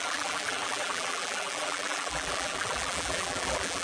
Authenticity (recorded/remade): remade